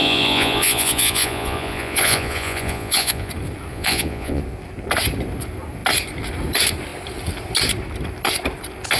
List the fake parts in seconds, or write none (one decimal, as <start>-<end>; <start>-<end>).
0.0-3.3; 3.7-4.4